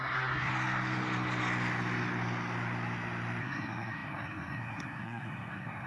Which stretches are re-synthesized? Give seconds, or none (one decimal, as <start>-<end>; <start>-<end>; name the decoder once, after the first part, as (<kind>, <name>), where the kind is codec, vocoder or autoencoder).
0.0-0.5 (codec, SNAC); 3.4-5.9